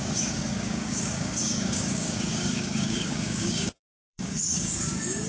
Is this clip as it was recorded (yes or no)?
no